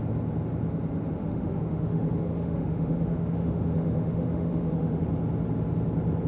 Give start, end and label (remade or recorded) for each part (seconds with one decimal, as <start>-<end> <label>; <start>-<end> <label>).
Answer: 0.0-1.2 recorded; 1.2-5.0 remade; 5.0-6.3 recorded